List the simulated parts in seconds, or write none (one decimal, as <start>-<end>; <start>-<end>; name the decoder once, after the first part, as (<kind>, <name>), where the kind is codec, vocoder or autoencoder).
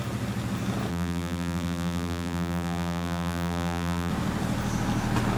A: 0.9-4.1 (vocoder, BigVGAN v2)